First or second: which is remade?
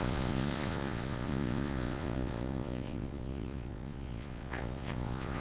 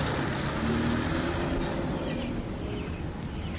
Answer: first